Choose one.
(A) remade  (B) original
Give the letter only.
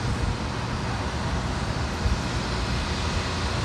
B